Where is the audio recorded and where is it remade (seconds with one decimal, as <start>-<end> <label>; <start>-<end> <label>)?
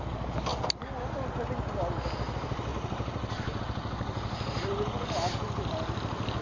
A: 0.0-2.7 recorded; 2.7-3.6 remade; 3.6-6.4 recorded